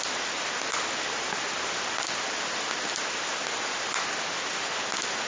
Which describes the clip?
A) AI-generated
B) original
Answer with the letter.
B